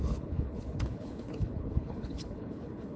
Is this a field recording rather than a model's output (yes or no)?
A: no